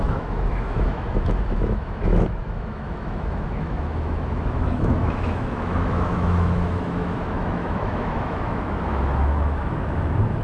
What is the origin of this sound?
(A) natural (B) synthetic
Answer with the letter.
B